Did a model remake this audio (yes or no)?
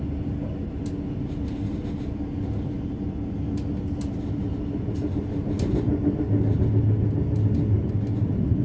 no